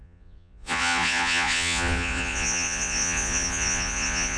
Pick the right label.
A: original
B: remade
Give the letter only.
B